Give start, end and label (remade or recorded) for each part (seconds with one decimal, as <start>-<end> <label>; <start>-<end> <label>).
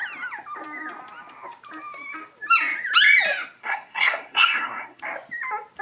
0.0-3.6 recorded; 3.6-5.0 remade; 5.0-5.8 recorded